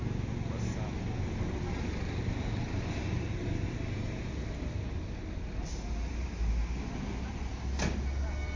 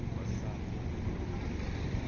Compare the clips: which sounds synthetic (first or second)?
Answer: second